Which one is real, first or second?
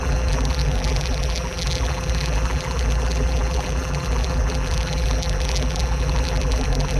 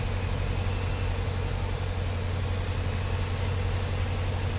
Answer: second